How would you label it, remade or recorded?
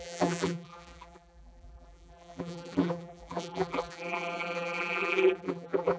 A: remade